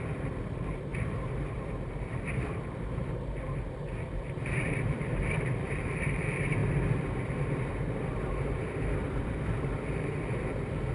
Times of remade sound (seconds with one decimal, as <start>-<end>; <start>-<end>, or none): 0.0-6.6; 8.3-10.9